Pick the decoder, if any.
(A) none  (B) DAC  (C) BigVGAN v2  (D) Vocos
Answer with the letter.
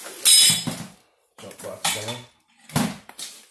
A